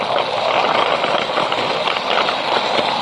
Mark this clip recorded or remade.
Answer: recorded